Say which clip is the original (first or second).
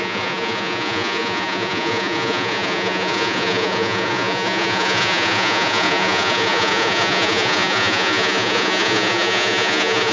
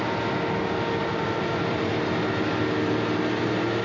second